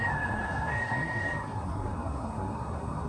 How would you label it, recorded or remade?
remade